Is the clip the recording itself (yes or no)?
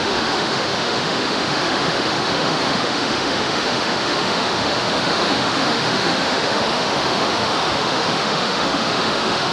no